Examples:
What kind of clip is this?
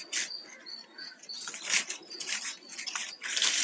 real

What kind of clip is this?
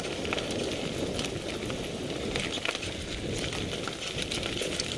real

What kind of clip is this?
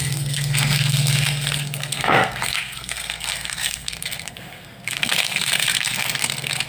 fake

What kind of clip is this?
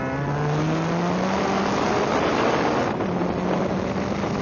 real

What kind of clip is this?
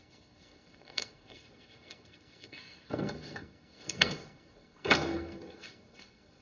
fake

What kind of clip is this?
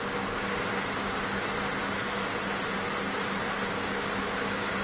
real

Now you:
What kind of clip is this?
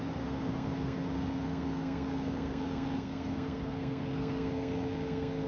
fake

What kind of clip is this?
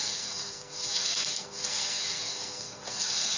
fake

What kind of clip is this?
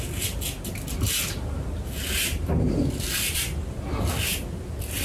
real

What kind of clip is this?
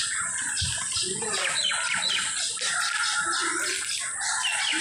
real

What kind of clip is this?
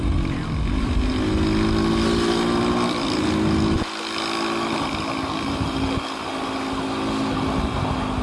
real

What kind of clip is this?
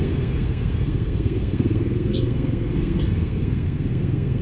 fake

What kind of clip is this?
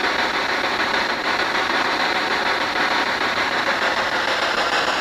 real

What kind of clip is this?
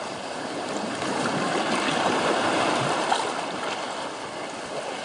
real